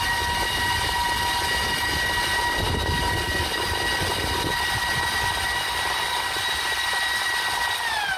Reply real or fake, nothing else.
real